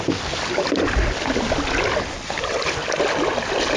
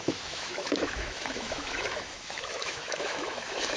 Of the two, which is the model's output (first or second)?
second